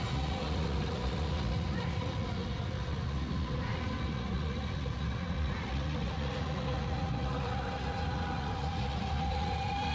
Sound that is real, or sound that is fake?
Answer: fake